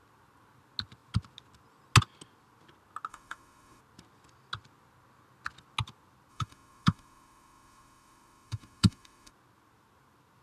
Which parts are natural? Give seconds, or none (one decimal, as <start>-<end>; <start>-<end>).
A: 0.0-3.1; 3.8-6.3; 9.3-10.4